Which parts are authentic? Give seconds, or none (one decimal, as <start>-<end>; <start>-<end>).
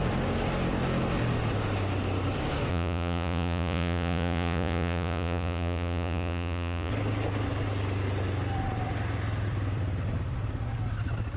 0.0-2.7; 6.9-11.4